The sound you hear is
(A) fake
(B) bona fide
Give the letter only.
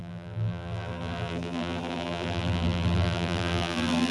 A